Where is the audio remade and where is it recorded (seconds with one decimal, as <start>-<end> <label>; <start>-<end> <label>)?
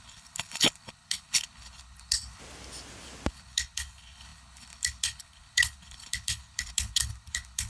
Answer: 0.0-2.4 remade; 2.4-3.3 recorded; 3.3-7.7 remade